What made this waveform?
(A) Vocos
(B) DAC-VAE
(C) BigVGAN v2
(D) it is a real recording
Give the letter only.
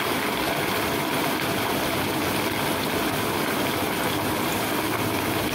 D